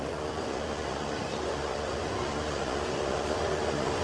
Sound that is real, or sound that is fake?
fake